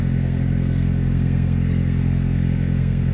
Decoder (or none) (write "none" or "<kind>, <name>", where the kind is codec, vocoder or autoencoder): codec, SNAC